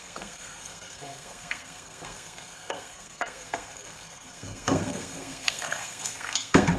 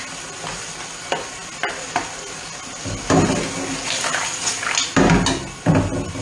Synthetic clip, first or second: first